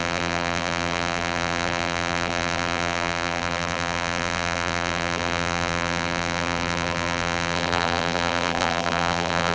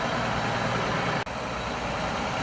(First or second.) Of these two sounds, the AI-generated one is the first